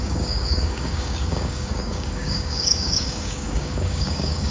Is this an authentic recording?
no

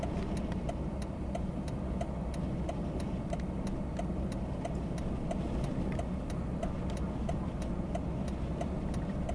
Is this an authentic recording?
yes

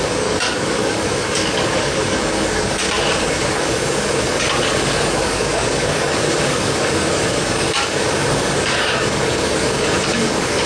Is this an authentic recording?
no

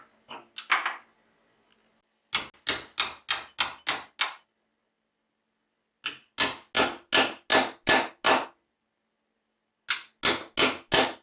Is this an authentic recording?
yes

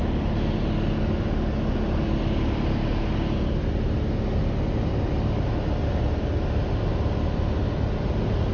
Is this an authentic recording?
yes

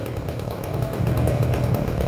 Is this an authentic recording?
no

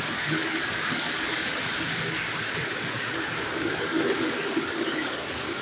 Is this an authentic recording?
no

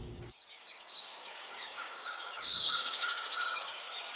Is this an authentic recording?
no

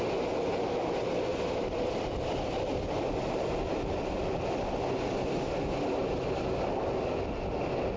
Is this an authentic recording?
yes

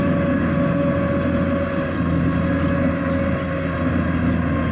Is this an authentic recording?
yes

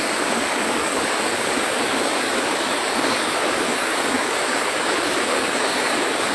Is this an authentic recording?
no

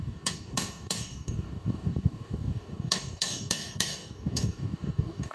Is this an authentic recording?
no